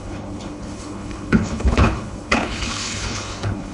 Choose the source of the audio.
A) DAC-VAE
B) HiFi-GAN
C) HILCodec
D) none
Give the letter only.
C